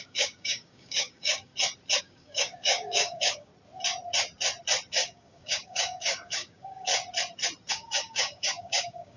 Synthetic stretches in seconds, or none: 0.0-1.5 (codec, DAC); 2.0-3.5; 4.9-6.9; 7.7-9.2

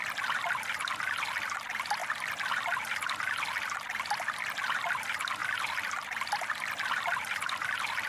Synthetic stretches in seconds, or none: 5.4-8.1 (vocoder, BigVGAN v2)

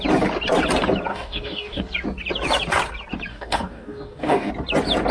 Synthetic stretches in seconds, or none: 1.1-1.8 (codec, DAC); 3.3-4.5

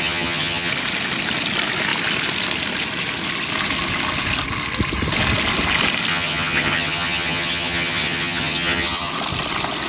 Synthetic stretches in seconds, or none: 0.0-0.7 (vocoder, HiFi-GAN); 6.1-9.1

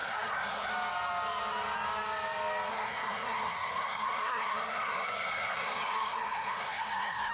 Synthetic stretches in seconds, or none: 0.0-0.7 (codec, SNAC); 2.7-7.3